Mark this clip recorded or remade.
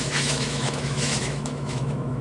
remade